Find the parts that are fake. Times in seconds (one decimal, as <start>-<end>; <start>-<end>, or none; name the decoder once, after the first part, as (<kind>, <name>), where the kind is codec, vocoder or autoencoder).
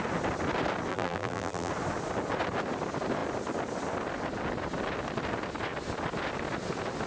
0.9-1.7 (vocoder, BigVGAN v2)